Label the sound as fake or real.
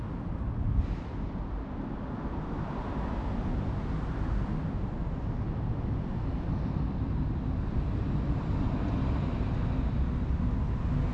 real